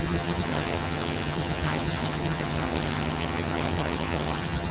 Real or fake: fake